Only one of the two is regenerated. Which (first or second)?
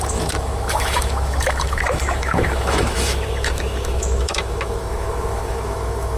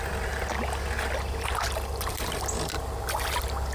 first